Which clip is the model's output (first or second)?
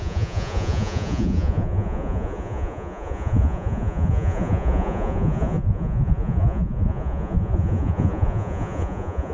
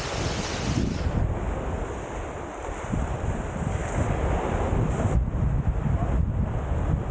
first